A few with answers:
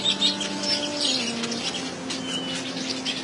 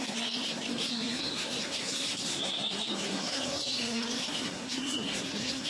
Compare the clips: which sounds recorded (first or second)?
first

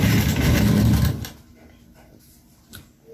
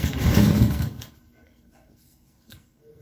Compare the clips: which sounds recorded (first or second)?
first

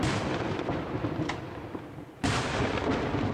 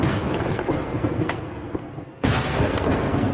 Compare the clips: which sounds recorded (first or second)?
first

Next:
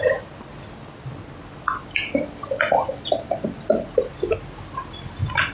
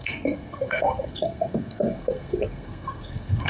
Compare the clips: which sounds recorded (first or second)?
first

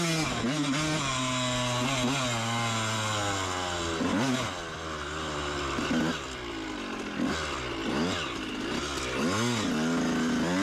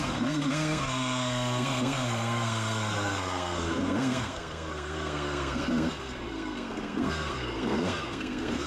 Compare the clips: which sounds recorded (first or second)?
first